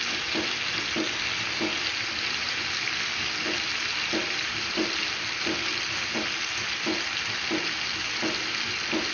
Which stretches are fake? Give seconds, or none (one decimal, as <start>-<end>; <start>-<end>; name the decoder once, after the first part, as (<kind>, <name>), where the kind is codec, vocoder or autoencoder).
none

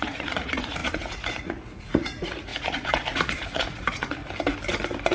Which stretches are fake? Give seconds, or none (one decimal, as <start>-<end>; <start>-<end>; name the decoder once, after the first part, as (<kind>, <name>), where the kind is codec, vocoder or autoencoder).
0.0-4.2 (vocoder, Vocos)

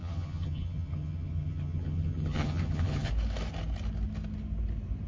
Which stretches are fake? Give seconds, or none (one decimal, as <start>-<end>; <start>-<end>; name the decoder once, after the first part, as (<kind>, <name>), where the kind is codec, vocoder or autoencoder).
0.0-3.1 (vocoder, HiFi-GAN)